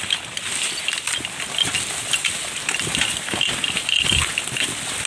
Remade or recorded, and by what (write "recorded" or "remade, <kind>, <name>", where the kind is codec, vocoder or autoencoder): recorded